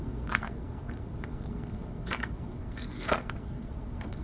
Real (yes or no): no